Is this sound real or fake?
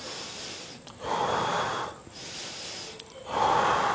real